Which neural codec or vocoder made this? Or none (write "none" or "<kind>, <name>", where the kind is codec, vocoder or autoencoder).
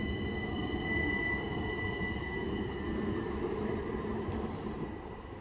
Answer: none